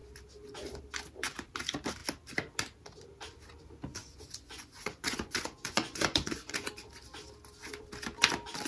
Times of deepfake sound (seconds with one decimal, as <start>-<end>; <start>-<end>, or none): 4.0-6.7